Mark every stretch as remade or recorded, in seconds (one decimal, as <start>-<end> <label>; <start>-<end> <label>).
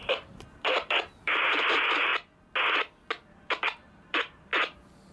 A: 0.0-2.1 remade; 2.1-3.3 recorded; 3.3-4.5 remade; 4.5-5.1 recorded